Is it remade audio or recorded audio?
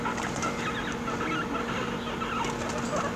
recorded